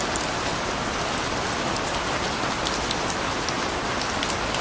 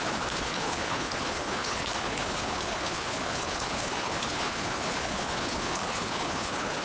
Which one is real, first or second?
first